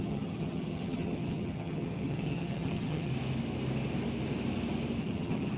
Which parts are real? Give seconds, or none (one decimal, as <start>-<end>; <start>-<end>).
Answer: 3.1-5.0

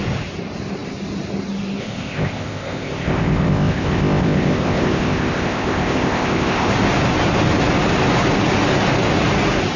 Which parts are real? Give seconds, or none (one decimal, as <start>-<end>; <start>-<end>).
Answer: 0.0-1.8; 6.7-9.8

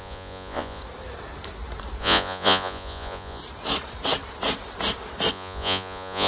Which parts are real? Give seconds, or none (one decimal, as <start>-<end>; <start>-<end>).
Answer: 0.8-2.0; 3.4-5.3

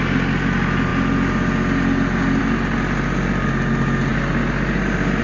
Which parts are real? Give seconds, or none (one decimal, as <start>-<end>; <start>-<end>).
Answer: 0.0-5.2

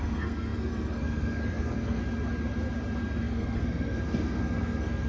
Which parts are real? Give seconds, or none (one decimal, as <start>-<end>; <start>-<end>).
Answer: 2.0-3.0